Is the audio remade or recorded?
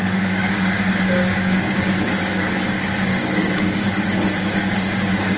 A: remade